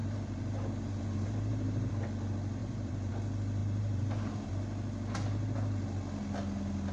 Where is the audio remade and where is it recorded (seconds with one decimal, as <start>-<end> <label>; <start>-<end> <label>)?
0.0-1.9 remade; 1.9-2.6 recorded; 2.6-3.1 remade; 3.1-3.6 recorded; 3.6-4.5 remade; 4.5-6.9 recorded